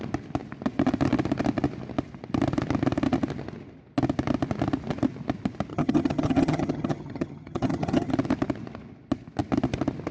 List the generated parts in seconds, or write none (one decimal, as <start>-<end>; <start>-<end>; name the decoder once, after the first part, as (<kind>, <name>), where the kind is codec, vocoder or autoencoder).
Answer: 5.7-8.1 (vocoder, HiFi-GAN)